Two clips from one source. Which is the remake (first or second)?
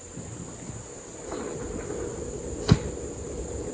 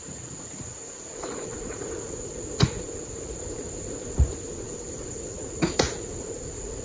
second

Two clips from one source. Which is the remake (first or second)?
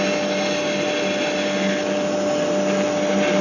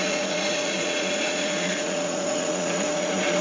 second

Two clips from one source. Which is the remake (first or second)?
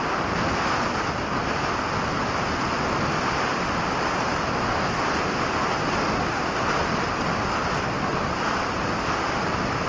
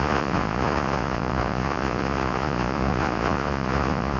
second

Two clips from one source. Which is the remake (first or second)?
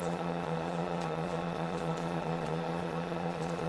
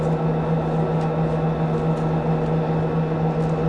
first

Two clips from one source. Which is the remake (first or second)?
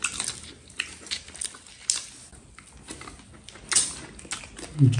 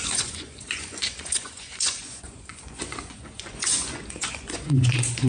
second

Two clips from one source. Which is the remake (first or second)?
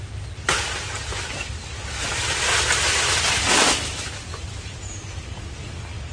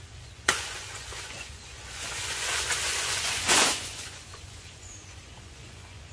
second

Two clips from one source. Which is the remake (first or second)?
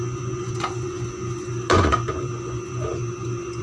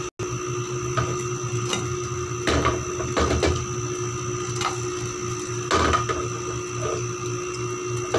first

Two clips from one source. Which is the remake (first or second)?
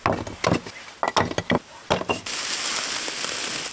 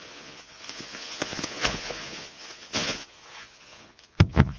second